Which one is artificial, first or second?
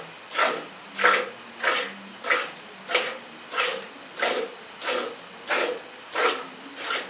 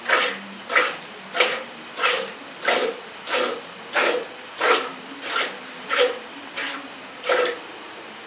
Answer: second